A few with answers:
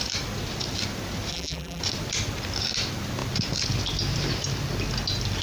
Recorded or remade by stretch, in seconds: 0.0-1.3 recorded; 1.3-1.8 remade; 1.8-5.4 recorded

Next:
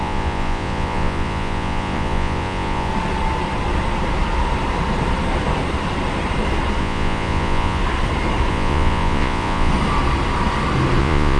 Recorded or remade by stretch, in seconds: 0.0-2.9 remade; 2.9-6.8 recorded; 6.8-7.8 remade; 7.8-8.5 recorded; 8.5-9.7 remade; 9.7-11.0 recorded; 11.0-11.4 remade

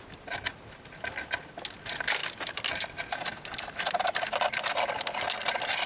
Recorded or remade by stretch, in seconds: 0.0-5.9 recorded

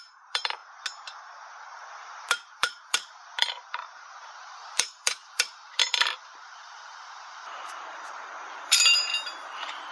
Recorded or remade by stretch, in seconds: 0.0-0.6 remade; 0.6-1.9 recorded; 1.9-9.1 remade; 9.1-9.9 recorded

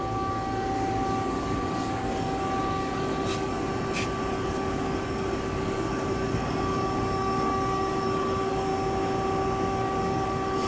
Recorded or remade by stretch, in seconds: 0.0-3.7 remade; 3.7-4.3 recorded; 4.3-8.7 remade; 8.7-9.7 recorded; 9.7-10.7 remade

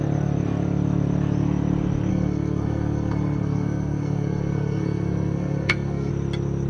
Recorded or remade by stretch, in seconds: 0.0-2.1 recorded; 2.1-6.1 remade; 6.1-6.7 recorded

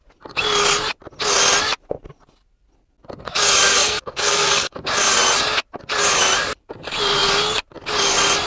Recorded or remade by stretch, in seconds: 0.0-3.7 recorded; 3.7-4.7 remade; 4.7-8.5 recorded

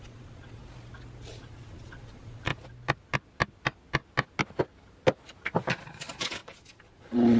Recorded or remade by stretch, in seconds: 0.0-0.6 remade; 0.6-1.3 recorded; 1.3-2.5 remade; 2.5-5.7 recorded; 5.7-7.4 remade